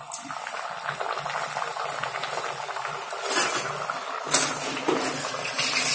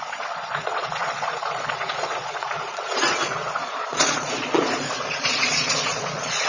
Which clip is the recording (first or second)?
first